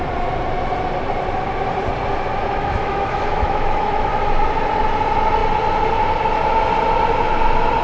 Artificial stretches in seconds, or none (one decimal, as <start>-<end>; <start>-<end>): 2.3-4.1